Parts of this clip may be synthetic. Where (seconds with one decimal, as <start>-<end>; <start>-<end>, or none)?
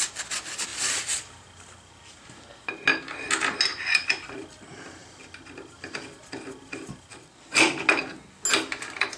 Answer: none